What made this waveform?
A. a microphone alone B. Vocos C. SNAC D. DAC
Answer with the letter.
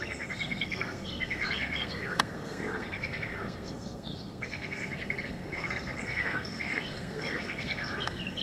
C